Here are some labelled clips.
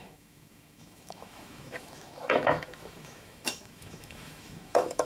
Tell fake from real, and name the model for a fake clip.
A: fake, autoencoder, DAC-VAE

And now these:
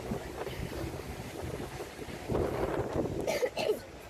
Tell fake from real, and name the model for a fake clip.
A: real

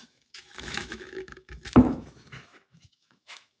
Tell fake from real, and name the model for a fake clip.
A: fake, autoencoder, DAC-VAE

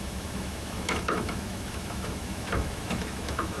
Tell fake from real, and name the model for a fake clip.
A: fake, autoencoder, DAC-VAE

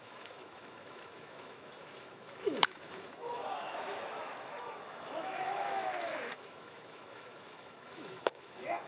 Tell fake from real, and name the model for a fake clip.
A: fake, autoencoder, DAC-VAE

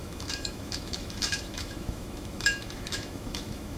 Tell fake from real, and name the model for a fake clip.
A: fake, autoencoder, DAC-VAE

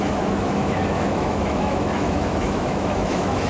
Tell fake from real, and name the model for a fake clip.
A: fake, autoencoder, DAC-VAE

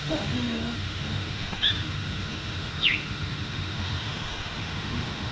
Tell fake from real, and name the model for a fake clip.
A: fake, autoencoder, DAC-VAE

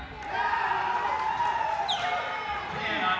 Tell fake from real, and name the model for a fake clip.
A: real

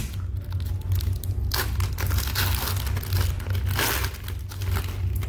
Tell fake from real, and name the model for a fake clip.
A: real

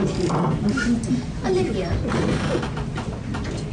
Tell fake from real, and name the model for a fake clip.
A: real